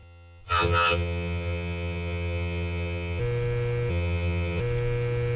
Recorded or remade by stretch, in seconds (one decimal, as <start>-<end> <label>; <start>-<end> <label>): 0.0-3.2 remade; 3.2-3.9 recorded; 3.9-4.6 remade; 4.6-5.4 recorded